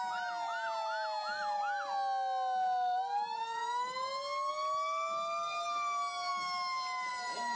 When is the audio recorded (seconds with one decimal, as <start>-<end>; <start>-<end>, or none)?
0.0-7.6